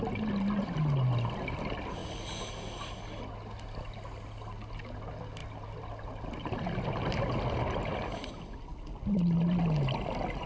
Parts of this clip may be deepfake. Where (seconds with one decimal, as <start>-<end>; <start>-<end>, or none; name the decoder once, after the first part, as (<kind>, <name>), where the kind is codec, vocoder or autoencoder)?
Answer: none